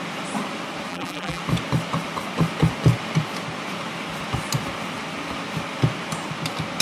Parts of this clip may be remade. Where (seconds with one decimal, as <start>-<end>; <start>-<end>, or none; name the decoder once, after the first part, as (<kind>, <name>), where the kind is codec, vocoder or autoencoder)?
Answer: 0.9-1.4 (vocoder, BigVGAN v2)